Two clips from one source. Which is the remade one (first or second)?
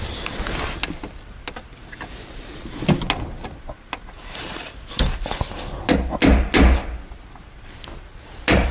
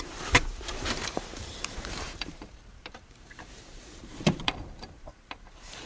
second